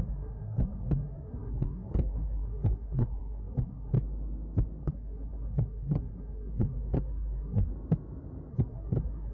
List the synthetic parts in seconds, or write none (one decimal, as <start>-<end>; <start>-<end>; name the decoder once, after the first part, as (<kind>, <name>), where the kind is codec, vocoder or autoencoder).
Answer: 0.0-3.9 (codec, SNAC); 4.8-7.7; 8.5-9.3